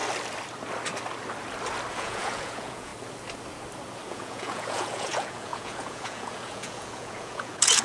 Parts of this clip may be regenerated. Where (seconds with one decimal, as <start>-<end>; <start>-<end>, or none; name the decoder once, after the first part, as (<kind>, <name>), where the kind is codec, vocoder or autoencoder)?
1.9-2.9 (vocoder, Vocos); 4.1-7.8